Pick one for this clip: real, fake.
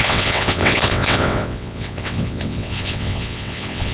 fake